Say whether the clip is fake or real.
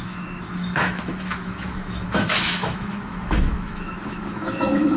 fake